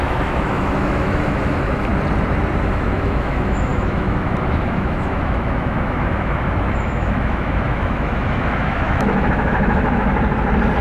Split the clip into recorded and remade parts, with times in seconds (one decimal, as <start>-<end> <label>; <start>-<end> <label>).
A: 0.0-1.9 remade; 1.9-2.6 recorded; 2.6-10.1 remade; 10.1-10.8 recorded